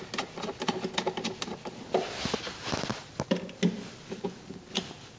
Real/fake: real